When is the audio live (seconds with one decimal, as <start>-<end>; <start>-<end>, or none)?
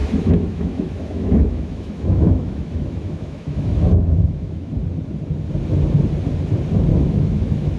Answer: 4.7-6.9